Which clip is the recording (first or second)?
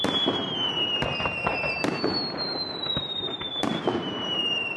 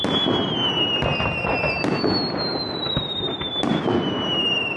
second